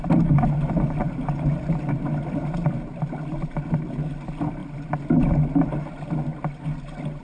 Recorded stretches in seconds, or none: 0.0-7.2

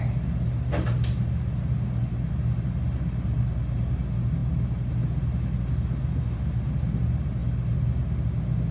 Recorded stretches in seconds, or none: 0.0-8.7